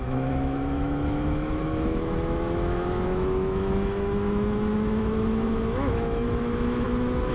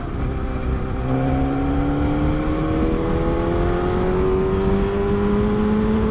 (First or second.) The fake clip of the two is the first